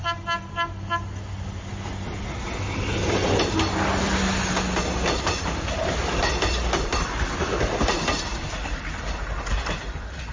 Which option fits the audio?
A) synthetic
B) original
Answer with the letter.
B